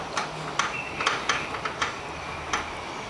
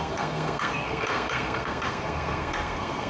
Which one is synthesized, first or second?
second